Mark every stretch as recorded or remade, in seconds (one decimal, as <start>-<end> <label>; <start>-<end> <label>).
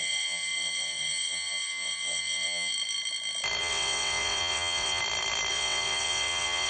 0.0-2.7 remade; 2.7-3.6 recorded; 3.6-5.0 remade; 5.0-5.5 recorded; 5.5-6.7 remade